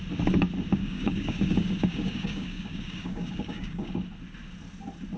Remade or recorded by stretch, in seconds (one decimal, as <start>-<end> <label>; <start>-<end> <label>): 0.0-0.8 recorded; 0.8-3.9 remade; 3.9-5.2 recorded